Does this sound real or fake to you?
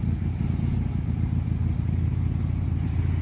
real